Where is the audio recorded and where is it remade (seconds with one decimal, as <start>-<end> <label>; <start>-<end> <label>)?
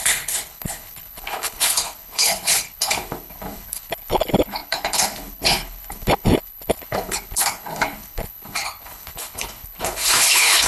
0.0-10.7 remade